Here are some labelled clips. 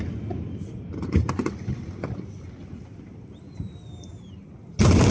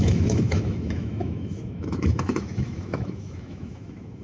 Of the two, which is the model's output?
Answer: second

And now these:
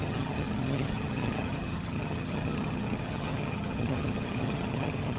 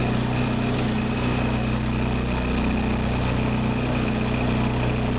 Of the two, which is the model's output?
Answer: first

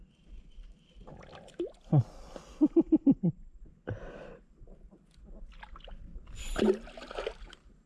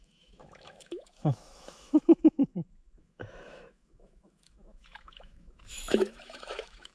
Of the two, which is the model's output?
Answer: second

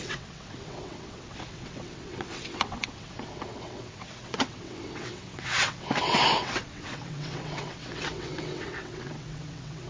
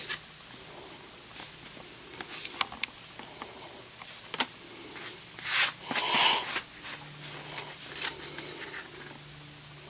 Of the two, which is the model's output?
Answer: first